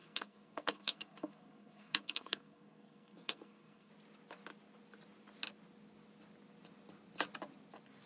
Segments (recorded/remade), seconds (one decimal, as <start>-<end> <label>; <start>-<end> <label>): 0.0-3.9 remade; 3.9-8.1 recorded